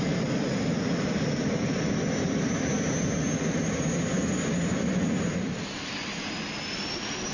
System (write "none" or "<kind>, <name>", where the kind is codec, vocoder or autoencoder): none